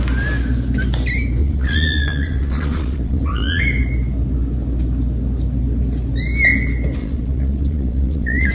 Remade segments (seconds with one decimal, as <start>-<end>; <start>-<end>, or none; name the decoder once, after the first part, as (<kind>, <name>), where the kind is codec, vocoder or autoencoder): 1.4-3.6 (vocoder, Vocos); 7.0-8.5